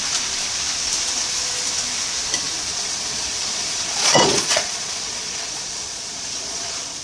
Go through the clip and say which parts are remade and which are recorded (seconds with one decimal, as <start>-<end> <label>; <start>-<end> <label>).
0.0-2.7 recorded; 2.7-7.0 remade

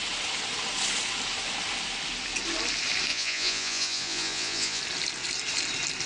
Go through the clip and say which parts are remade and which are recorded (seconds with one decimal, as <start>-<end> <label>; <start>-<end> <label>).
0.0-3.1 recorded; 3.1-4.8 remade; 4.8-6.1 recorded

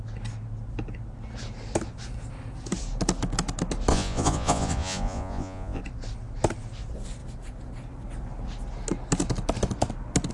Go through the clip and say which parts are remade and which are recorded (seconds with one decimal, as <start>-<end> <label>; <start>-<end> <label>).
0.0-3.9 recorded; 3.9-5.8 remade; 5.8-10.3 recorded

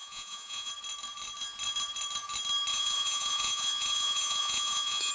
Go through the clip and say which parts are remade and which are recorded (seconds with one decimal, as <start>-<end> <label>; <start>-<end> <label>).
0.0-0.7 remade; 0.7-2.7 recorded; 2.7-5.1 remade

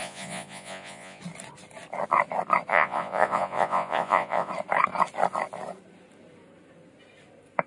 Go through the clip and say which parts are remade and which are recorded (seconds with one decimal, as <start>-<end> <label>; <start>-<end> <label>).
0.0-1.2 remade; 1.2-2.7 recorded; 2.7-4.5 remade; 4.5-7.7 recorded